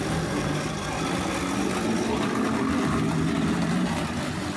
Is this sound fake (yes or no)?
no